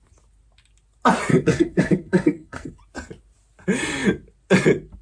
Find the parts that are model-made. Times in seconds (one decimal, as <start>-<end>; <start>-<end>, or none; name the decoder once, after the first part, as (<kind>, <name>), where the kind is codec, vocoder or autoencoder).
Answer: 1.3-2.8 (codec, SNAC)